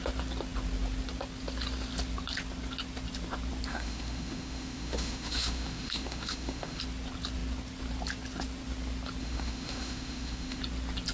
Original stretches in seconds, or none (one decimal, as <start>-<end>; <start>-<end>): 0.0-3.7; 6.8-9.2; 10.6-11.1